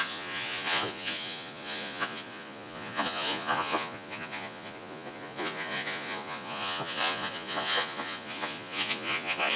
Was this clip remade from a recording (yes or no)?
yes